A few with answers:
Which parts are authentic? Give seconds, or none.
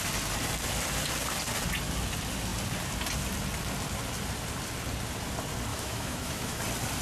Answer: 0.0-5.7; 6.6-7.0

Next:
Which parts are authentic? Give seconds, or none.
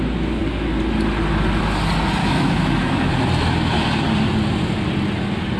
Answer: 0.0-2.2; 3.1-5.6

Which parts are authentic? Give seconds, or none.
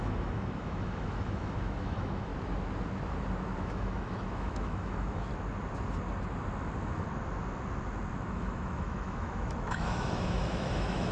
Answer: 2.3-3.6; 5.3-8.3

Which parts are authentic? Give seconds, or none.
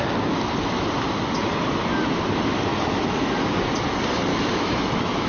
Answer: 0.0-2.7; 3.3-4.3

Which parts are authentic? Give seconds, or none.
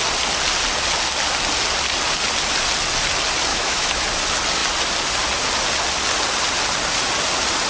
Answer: 0.0-3.5; 4.0-7.7